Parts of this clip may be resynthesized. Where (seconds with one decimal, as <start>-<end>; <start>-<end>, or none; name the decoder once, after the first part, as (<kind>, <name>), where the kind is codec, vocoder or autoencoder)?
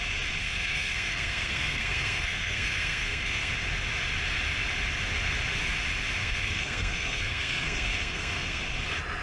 0.4-3.5 (codec, SNAC); 6.2-8.6